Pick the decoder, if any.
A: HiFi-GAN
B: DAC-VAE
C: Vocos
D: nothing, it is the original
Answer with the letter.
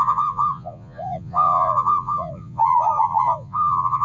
C